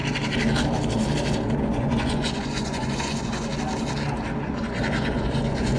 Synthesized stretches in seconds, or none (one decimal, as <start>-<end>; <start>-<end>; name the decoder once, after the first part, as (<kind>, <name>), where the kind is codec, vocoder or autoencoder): 1.6-3.5 (vocoder, Vocos); 4.4-5.8